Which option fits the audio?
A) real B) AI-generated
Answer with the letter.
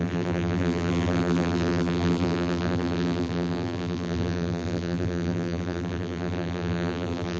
B